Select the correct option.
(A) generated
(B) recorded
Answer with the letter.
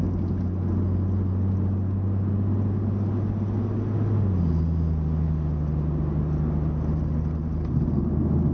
B